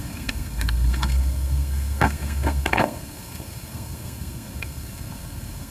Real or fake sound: fake